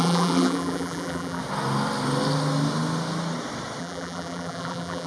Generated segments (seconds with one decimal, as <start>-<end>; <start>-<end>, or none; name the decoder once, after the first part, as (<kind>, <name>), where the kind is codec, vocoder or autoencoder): 0.0-1.4 (vocoder, BigVGAN v2); 3.8-5.1